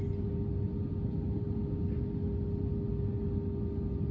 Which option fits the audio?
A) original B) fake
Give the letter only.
A